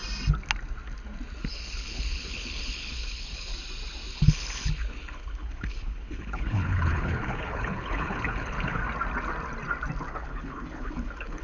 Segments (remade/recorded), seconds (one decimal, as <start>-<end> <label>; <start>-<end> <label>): 0.0-1.5 recorded; 1.5-3.5 remade; 3.5-4.1 recorded; 4.1-8.8 remade; 8.8-10.1 recorded; 10.1-11.4 remade